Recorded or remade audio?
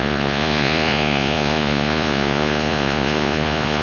remade